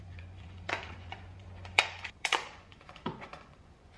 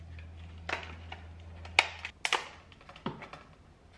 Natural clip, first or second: second